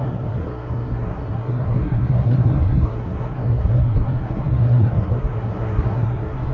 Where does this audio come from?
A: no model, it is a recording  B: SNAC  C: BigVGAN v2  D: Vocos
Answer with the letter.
B